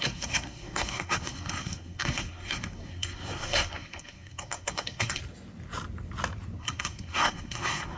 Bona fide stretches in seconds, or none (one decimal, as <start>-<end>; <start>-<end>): 5.2-6.6